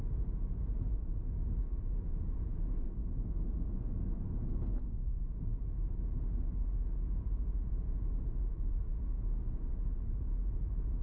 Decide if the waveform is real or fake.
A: fake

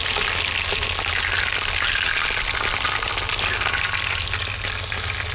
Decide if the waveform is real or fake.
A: real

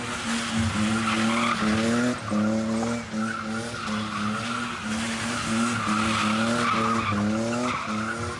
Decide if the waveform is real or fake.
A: real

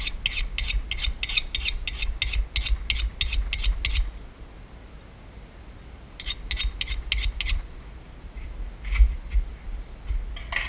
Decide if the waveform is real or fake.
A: real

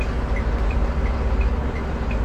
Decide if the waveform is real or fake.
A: real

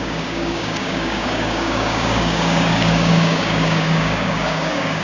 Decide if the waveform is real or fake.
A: fake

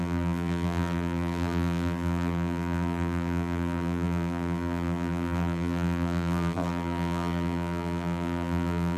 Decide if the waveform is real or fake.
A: fake